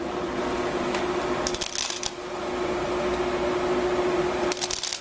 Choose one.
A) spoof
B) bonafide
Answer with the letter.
B